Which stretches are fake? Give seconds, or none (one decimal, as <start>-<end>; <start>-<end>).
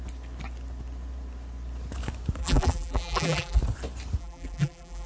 2.4-3.6; 4.2-5.1